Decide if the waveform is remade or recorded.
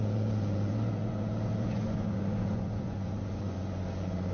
remade